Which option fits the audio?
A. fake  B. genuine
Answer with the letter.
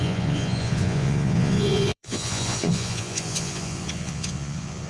A